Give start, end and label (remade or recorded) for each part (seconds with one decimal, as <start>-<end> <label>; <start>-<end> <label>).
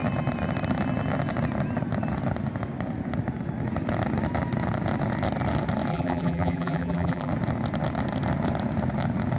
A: 0.0-5.9 recorded; 5.9-7.3 remade; 7.3-9.4 recorded